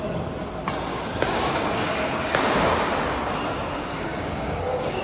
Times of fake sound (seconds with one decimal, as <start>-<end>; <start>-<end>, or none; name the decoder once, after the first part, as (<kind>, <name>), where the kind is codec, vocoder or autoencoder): 0.9-2.9 (codec, DAC); 3.5-5.0